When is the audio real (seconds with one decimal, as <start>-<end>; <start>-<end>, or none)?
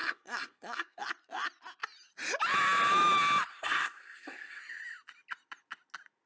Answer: 1.0-3.5; 4.6-6.3